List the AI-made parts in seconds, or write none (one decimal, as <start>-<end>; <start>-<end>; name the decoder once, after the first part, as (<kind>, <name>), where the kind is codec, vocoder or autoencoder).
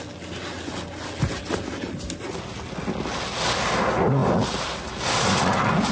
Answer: none